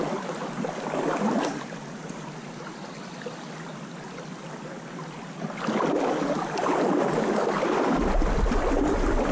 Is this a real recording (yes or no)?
yes